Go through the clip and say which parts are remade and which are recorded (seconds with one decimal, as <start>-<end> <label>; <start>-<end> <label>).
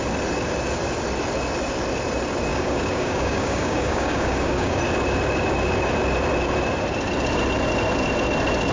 0.0-2.5 recorded; 2.5-4.8 remade; 4.8-8.7 recorded